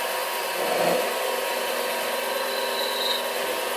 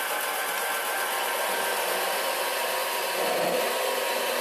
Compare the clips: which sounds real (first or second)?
first